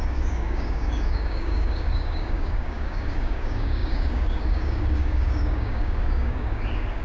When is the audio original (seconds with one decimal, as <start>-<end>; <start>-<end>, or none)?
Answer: none